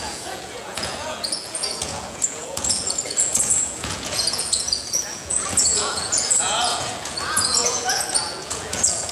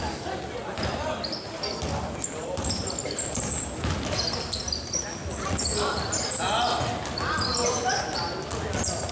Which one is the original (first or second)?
second